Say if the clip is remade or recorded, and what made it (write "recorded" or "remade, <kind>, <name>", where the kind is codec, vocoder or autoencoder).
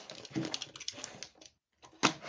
recorded